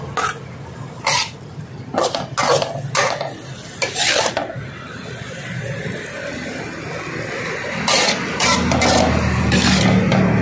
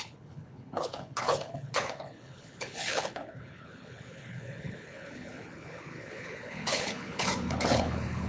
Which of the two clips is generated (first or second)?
second